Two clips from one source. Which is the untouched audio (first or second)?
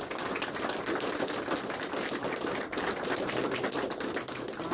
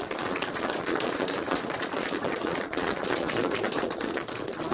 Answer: first